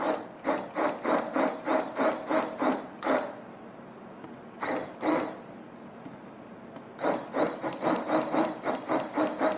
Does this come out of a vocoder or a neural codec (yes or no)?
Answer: no